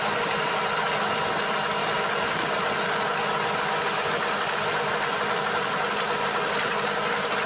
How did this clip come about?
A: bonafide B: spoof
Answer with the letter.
A